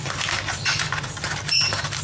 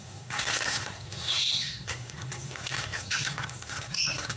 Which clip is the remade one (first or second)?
second